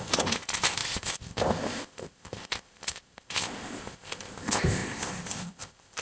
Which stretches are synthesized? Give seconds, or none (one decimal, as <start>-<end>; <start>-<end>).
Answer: 0.0-6.0